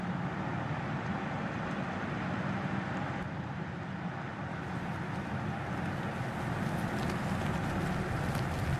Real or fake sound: real